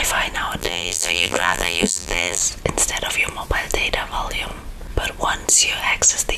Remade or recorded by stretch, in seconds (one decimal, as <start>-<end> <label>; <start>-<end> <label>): 0.0-0.6 recorded; 0.6-2.4 remade; 2.4-6.4 recorded